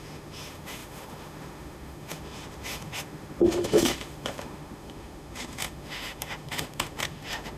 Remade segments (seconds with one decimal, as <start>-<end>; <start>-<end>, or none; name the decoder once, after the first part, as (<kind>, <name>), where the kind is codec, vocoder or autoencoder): 0.0-7.6 (autoencoder, DAC-VAE)